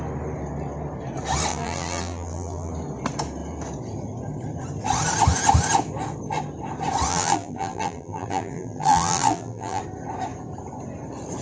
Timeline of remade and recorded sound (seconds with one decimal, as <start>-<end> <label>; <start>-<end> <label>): 0.0-1.5 recorded; 1.5-2.7 remade; 2.7-7.1 recorded; 7.1-9.8 remade; 9.8-11.4 recorded